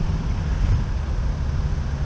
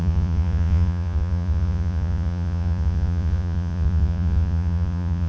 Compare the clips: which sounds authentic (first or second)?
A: first